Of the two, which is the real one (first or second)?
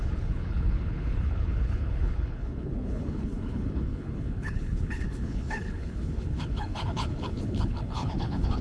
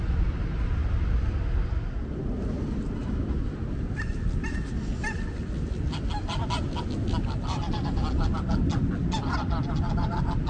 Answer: second